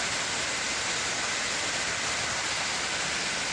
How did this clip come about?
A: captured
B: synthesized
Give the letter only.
A